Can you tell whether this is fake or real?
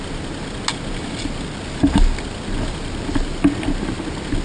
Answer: real